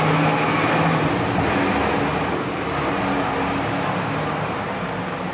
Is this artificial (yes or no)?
no